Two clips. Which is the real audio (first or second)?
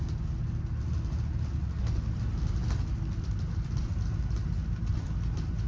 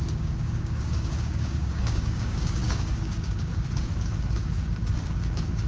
first